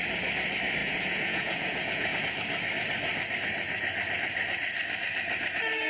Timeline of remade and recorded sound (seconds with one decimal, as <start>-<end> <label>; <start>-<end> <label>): 0.0-0.8 recorded; 0.8-2.2 remade; 2.2-5.9 recorded